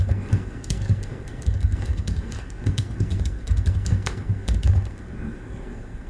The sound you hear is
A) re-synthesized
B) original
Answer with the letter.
A